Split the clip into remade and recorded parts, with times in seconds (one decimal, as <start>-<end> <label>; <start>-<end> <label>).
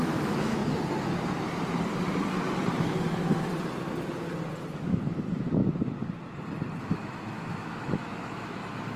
0.0-0.6 remade; 0.6-2.8 recorded; 2.8-3.5 remade; 3.5-4.7 recorded; 4.7-5.6 remade; 5.6-6.8 recorded; 6.8-9.0 remade